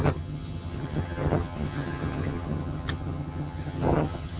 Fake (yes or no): yes